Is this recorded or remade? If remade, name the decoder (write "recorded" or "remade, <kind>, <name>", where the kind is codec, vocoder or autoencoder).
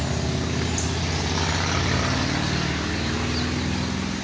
recorded